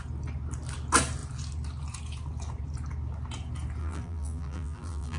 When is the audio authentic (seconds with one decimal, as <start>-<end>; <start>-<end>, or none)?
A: 0.0-3.8